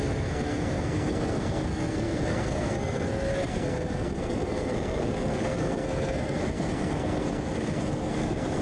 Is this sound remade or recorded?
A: remade